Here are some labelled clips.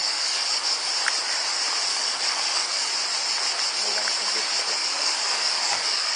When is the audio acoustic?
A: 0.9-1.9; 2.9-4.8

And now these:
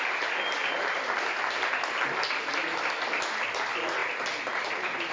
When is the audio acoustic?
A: 0.0-5.1

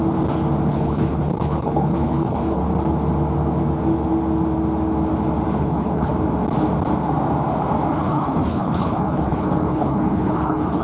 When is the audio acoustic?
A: 0.0-0.7; 2.6-5.6; 6.1-7.9

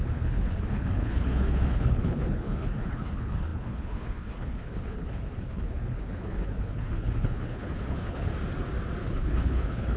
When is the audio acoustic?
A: 8.3-9.0

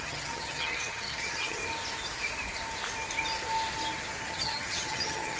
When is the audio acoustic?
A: 1.6-4.3

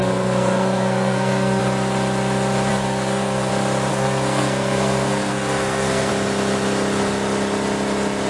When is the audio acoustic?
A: 1.6-2.7; 3.5-3.9; 6.1-8.3

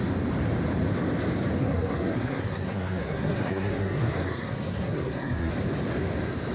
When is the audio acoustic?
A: 0.0-1.6; 5.5-6.5